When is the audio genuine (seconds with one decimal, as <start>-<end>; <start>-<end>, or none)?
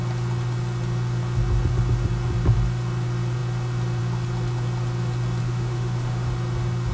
0.0-5.4; 6.3-6.9